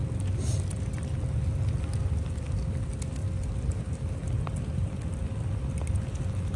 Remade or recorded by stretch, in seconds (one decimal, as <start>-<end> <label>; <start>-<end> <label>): 0.0-3.2 recorded; 3.2-3.8 remade; 3.8-4.2 recorded; 4.2-5.7 remade; 5.7-6.6 recorded